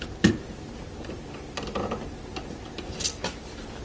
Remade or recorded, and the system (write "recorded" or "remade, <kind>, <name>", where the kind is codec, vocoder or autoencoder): remade, vocoder, BigVGAN v2